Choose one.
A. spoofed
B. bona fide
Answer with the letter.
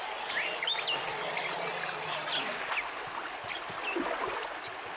B